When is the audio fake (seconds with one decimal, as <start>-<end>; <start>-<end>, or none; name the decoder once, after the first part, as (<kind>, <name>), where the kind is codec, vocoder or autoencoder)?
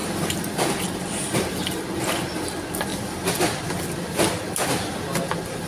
0.0-1.2 (vocoder, BigVGAN v2)